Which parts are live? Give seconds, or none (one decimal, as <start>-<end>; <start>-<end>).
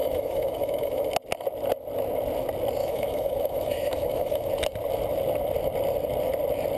1.1-2.8; 4.5-6.8